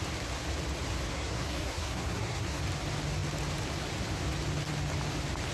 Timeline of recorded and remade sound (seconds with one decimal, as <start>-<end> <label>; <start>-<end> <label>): 0.0-1.1 recorded; 1.1-2.6 remade; 2.6-5.5 recorded